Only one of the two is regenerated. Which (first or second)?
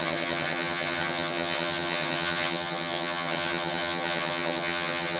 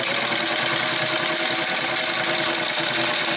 first